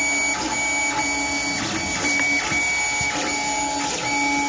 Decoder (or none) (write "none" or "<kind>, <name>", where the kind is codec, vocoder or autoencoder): none